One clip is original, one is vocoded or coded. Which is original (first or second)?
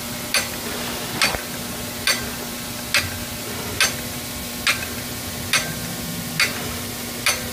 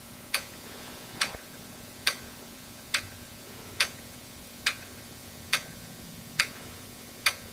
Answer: first